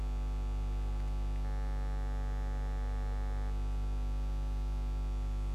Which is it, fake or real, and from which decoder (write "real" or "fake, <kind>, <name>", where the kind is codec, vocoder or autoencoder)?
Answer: real